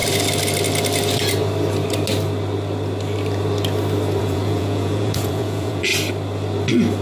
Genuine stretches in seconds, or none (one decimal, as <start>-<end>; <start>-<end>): 0.0-4.2; 5.9-7.0